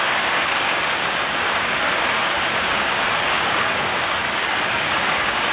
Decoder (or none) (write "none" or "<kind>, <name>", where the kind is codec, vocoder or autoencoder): codec, DAC